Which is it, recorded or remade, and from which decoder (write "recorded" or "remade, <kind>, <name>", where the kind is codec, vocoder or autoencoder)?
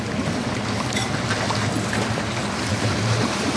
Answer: recorded